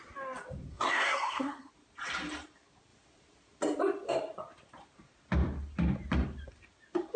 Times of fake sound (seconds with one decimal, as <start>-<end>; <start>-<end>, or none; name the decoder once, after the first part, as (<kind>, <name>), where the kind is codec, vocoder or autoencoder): 0.7-1.7 (codec, SNAC)